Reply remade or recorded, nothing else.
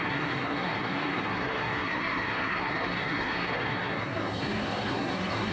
remade